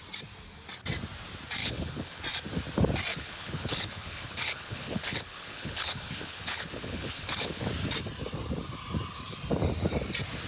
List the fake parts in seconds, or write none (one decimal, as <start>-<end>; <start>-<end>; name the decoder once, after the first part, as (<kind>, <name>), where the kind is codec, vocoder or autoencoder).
1.6-2.2 (codec, HILCodec); 3.1-7.7